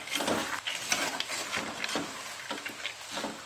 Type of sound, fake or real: real